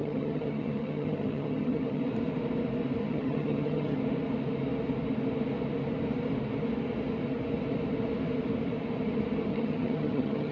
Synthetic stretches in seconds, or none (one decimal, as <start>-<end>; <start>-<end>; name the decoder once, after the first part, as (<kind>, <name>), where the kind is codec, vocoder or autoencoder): 0.0-2.0 (vocoder, HiFi-GAN); 3.0-4.0; 9.5-10.5

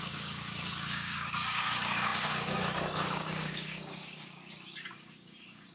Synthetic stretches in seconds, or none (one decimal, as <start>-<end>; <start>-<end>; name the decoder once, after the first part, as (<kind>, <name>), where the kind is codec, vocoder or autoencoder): 0.0-5.7 (codec, DAC)

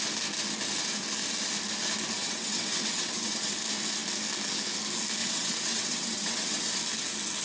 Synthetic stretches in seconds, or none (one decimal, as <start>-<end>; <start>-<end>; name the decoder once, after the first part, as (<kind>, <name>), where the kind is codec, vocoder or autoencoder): 2.2-3.5 (vocoder, WaveNeXt); 5.2-6.8

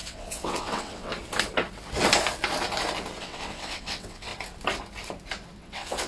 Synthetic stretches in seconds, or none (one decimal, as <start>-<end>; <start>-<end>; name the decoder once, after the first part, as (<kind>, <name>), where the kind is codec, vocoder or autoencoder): 0.0-1.1 (vocoder, WaveNeXt); 3.2-4.3; 5.6-6.1

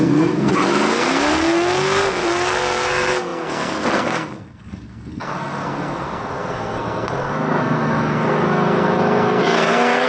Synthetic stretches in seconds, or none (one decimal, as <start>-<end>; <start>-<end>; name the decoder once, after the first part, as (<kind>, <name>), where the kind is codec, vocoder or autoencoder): 0.0-10.1 (codec, SNAC)

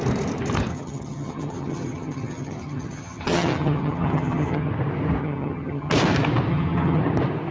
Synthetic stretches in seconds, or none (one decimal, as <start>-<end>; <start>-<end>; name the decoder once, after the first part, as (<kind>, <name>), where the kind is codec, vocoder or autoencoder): 0.7-4.7 (vocoder, HiFi-GAN); 5.2-5.9; 6.5-7.0

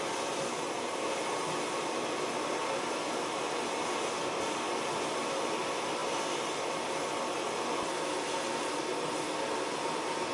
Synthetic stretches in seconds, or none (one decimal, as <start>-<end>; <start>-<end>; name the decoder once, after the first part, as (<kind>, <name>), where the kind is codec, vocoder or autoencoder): none